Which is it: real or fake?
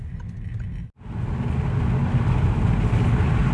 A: real